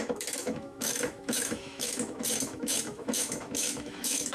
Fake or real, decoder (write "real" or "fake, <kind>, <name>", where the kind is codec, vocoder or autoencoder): fake, autoencoder, DAC-VAE